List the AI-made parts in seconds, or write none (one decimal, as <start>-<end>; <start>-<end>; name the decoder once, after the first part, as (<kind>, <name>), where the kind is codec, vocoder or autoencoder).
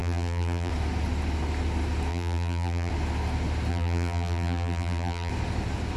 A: 0.0-0.7 (vocoder, BigVGAN v2); 2.1-2.9; 3.7-5.3